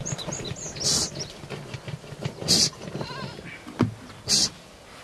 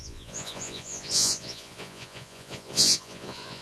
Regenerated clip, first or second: second